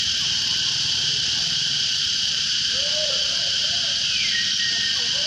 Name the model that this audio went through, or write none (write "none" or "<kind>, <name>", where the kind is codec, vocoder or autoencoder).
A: vocoder, BigVGAN v2